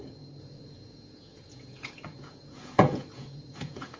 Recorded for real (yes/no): no